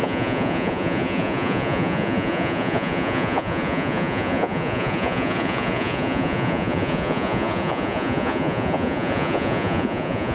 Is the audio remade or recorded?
remade